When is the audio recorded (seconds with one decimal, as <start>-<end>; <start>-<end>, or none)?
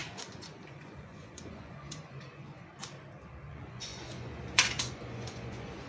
2.7-3.5